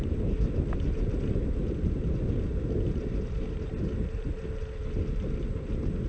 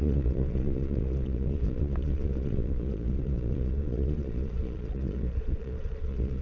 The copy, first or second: second